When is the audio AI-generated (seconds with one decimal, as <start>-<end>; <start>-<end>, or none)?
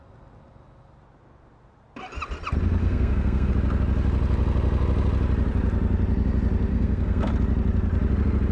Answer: 2.8-3.5; 6.7-7.3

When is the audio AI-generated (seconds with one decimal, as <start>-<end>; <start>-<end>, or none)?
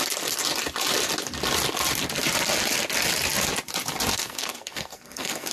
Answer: 4.1-5.5